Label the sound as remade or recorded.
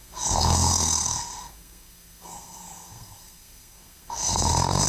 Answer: remade